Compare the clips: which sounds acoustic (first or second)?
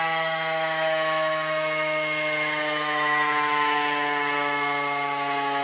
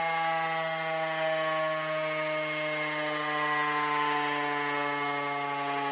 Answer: second